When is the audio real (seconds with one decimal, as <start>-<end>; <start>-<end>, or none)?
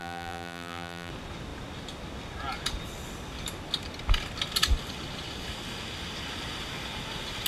1.1-7.5